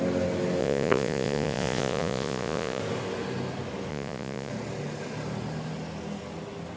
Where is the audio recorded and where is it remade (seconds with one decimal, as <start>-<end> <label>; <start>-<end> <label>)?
0.0-0.6 recorded; 0.6-2.8 remade; 2.8-3.9 recorded; 3.9-4.5 remade; 4.5-6.8 recorded